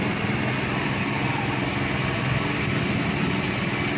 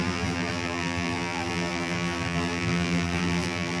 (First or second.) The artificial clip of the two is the second